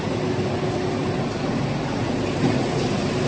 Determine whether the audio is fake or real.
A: real